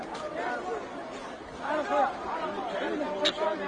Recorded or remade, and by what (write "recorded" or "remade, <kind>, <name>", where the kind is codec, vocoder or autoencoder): recorded